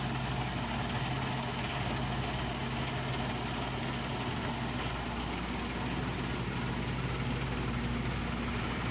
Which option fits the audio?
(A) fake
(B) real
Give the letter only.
B